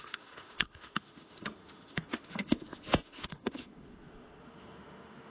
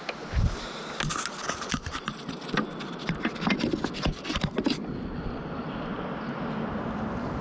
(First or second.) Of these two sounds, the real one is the second